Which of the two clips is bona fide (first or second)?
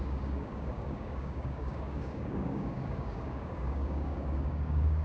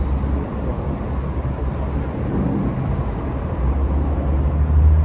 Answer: second